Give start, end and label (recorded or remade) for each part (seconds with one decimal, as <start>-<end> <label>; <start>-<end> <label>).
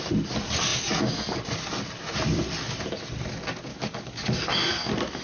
0.0-3.7 recorded; 3.7-4.5 remade; 4.5-5.2 recorded